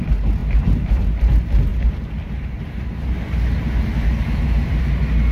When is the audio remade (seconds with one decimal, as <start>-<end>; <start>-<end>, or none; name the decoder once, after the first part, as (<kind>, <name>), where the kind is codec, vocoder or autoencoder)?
0.4-1.0 (vocoder, BigVGAN v2); 1.7-4.8